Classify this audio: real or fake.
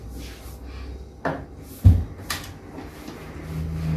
real